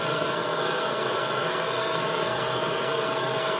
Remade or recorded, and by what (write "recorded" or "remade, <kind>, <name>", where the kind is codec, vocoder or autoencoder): remade, codec, SNAC